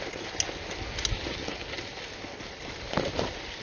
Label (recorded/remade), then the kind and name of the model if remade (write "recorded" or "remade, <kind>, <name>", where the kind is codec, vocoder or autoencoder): recorded